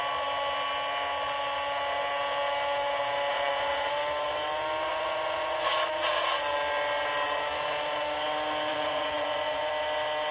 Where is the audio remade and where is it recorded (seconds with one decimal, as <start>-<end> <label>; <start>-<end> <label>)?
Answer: 0.0-3.3 recorded; 3.3-3.9 remade; 3.9-4.9 recorded; 4.9-5.7 remade; 5.7-8.7 recorded; 8.7-9.7 remade; 9.7-10.3 recorded